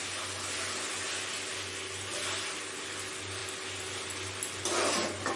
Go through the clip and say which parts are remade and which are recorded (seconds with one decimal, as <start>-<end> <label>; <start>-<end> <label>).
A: 0.0-5.4 recorded

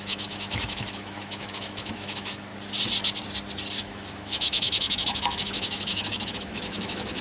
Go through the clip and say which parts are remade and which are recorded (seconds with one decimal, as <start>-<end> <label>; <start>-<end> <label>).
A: 0.0-2.5 remade; 2.5-3.8 recorded; 3.8-7.2 remade

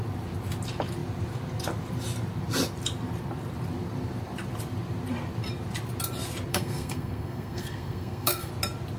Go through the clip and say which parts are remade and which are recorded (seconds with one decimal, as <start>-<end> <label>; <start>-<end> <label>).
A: 0.0-6.5 recorded; 6.5-8.5 remade; 8.5-9.0 recorded

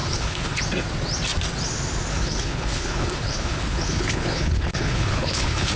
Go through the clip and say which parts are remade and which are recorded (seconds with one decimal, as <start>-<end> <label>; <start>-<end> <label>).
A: 0.0-0.6 remade; 0.6-2.1 recorded; 2.1-5.8 remade

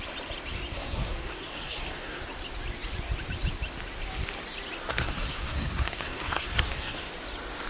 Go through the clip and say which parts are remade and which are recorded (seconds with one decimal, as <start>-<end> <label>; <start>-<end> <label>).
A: 0.0-0.7 recorded; 0.7-2.2 remade; 2.2-4.9 recorded; 4.9-7.1 remade; 7.1-7.7 recorded